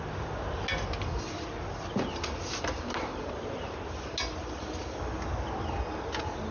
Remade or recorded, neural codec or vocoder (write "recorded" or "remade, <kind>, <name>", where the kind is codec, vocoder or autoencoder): recorded